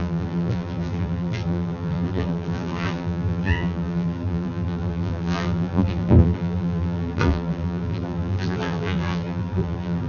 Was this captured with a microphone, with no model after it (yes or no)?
no